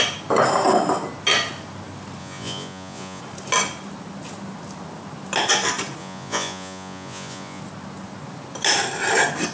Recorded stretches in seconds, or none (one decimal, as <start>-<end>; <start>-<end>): 0.0-2.2; 3.2-6.0; 7.6-9.5